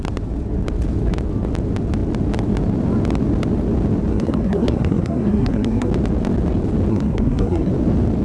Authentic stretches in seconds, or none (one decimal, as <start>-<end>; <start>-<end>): 0.0-4.1; 5.9-6.9; 7.7-8.2

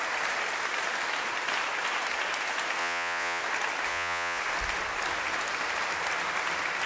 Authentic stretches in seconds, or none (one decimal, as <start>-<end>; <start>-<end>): 0.0-2.8; 3.4-3.9; 4.4-6.9

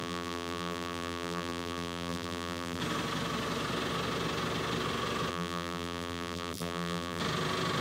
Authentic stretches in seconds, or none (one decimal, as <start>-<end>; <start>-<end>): 2.8-5.3; 7.2-7.8

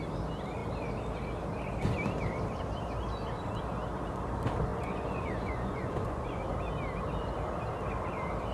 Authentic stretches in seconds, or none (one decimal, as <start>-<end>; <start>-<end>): 0.0-4.7; 6.4-8.5

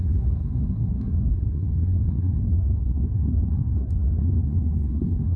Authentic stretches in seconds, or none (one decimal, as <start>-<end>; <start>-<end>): none

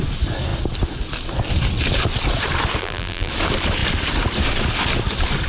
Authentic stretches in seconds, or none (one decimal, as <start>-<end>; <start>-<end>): 0.0-2.8; 3.3-5.5

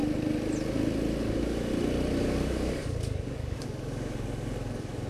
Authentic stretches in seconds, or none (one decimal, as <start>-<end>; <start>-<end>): 0.0-1.2; 1.7-2.2